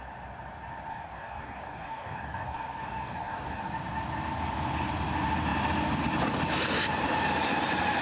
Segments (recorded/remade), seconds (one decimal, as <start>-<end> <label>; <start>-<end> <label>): 0.0-0.9 recorded; 0.9-3.7 remade; 3.7-8.0 recorded